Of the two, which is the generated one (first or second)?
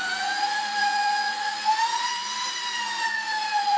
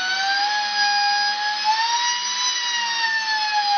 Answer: first